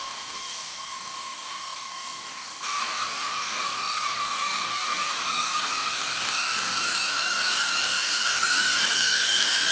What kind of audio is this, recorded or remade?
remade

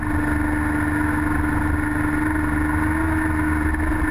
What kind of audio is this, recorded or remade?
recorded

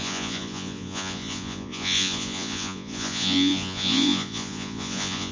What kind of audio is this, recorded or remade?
remade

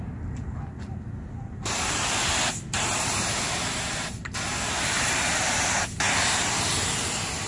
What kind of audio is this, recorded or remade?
recorded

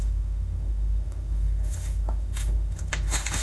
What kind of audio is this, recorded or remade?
remade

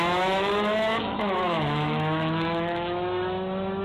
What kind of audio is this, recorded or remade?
remade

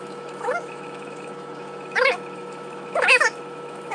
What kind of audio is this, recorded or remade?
remade